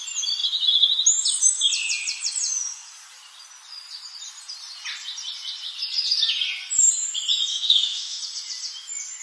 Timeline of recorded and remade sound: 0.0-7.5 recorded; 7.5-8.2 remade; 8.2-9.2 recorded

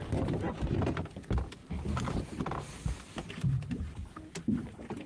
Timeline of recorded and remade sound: 0.0-5.1 recorded

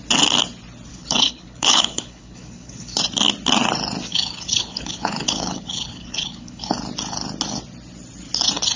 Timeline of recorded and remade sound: 0.0-0.9 recorded; 0.9-3.0 remade; 3.0-4.1 recorded; 4.1-6.7 remade; 6.7-8.8 recorded

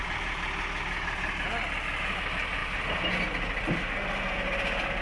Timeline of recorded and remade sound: 0.0-5.0 recorded

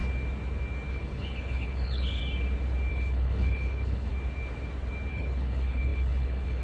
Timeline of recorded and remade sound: 0.0-0.9 recorded; 0.9-2.2 remade; 2.2-2.9 recorded; 2.9-4.1 remade; 4.1-5.1 recorded; 5.1-6.6 remade

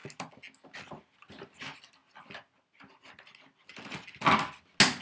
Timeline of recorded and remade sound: 0.0-5.0 recorded

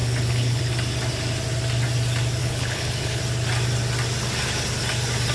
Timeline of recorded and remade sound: 0.0-0.6 remade; 0.6-2.4 recorded; 2.4-3.2 remade; 3.2-5.3 recorded